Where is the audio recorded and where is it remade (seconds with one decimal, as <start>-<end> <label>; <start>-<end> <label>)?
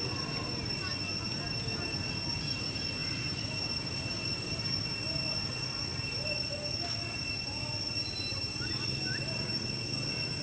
0.0-10.4 recorded